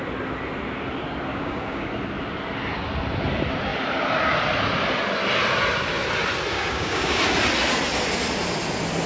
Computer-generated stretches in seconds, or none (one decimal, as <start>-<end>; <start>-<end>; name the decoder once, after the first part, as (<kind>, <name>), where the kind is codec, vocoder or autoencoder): 1.3-1.9 (codec, DAC); 6.5-7.2